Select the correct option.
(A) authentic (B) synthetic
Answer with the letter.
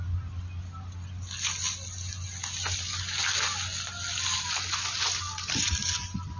A